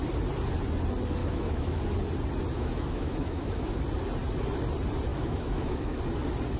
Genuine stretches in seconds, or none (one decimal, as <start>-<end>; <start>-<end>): 0.0-1.2; 1.8-2.5; 3.8-5.1; 6.0-6.6